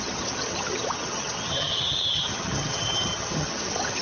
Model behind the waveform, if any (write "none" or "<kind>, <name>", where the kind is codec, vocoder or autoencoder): vocoder, HiFi-GAN